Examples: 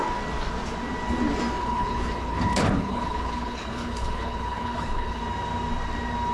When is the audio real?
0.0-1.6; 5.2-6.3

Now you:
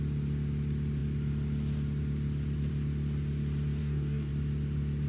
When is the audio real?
0.0-3.8; 4.3-5.1

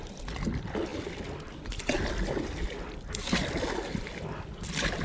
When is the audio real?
0.0-5.0

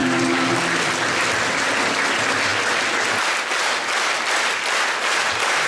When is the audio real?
0.0-5.7

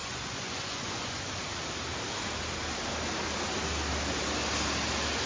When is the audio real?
1.3-5.3

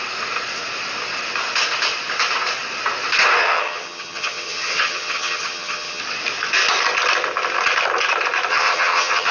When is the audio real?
0.0-3.4; 6.0-8.5

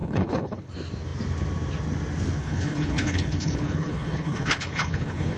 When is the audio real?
0.7-2.4

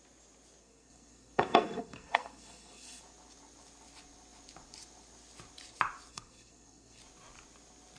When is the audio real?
0.0-0.6; 3.0-6.1; 7.0-8.0